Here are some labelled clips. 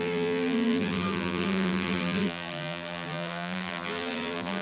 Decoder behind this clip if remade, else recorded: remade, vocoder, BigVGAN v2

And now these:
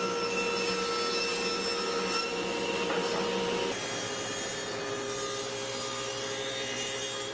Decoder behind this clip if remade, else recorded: recorded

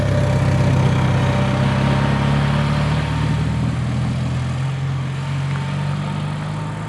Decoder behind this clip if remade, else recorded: recorded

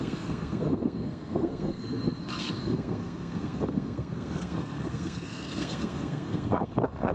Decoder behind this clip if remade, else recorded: remade, codec, SNAC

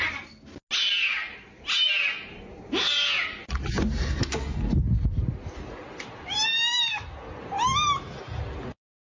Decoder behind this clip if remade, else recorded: recorded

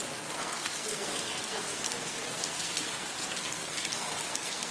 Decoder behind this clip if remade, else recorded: remade, codec, SNAC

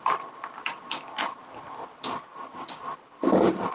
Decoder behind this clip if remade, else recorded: recorded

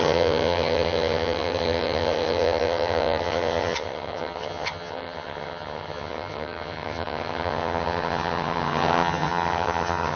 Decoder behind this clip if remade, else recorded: remade, vocoder, HiFi-GAN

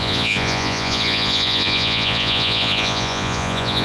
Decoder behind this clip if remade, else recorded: remade, vocoder, Vocos